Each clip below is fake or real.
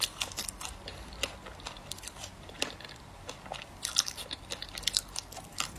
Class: real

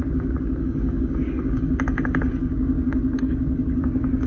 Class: fake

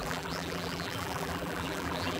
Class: fake